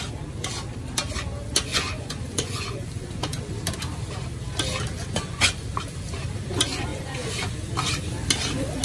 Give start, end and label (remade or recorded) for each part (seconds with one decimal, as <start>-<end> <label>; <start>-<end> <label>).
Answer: 0.0-1.7 recorded; 1.7-3.4 remade; 3.4-5.0 recorded; 5.0-5.7 remade; 5.7-6.9 recorded; 6.9-7.5 remade; 7.5-8.8 recorded